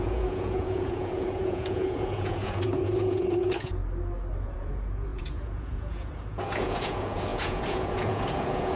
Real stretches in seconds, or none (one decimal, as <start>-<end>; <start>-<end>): 3.8-4.4